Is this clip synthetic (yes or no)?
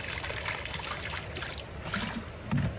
no